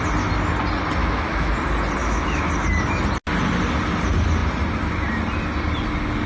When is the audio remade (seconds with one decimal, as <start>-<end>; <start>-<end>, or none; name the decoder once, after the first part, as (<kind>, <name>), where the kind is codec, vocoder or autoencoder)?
1.0-1.5 (autoencoder, DAC-VAE); 2.0-2.5